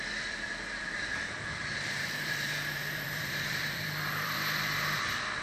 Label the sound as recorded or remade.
remade